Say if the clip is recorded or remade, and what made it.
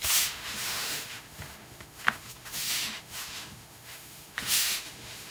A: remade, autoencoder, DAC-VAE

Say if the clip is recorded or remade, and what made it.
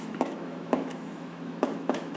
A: remade, autoencoder, DAC-VAE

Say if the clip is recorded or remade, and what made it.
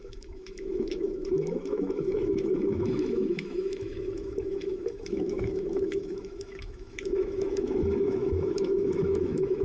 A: remade, autoencoder, DAC-VAE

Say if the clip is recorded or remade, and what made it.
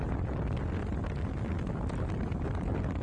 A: recorded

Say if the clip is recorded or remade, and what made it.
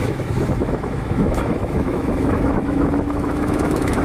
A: remade, autoencoder, DAC-VAE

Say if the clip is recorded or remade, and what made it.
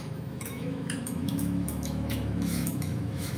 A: remade, autoencoder, DAC-VAE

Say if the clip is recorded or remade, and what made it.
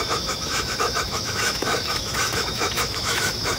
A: remade, autoencoder, DAC-VAE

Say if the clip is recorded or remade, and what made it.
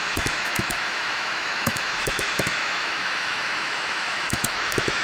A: remade, autoencoder, DAC-VAE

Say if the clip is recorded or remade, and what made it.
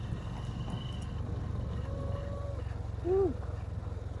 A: recorded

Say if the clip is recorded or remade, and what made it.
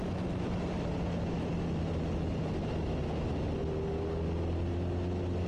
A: recorded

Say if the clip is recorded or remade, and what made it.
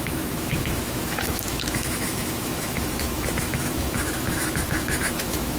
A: remade, autoencoder, DAC-VAE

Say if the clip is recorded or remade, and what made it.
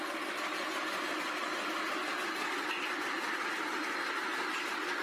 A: recorded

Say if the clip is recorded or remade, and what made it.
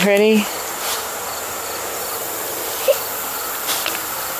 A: recorded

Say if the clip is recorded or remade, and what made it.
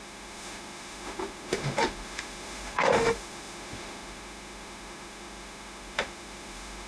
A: remade, autoencoder, DAC-VAE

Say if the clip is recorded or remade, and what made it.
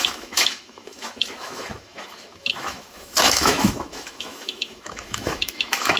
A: remade, autoencoder, DAC-VAE